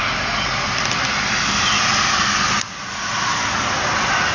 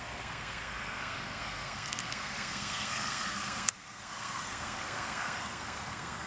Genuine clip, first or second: first